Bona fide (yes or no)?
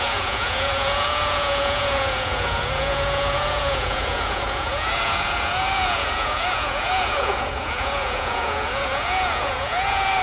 no